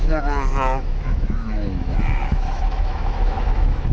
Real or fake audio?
fake